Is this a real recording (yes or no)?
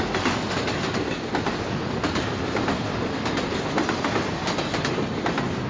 yes